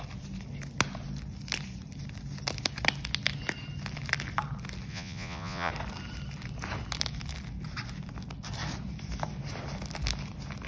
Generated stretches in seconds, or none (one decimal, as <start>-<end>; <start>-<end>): 4.9-5.7